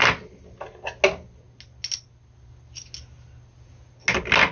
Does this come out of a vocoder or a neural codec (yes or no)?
no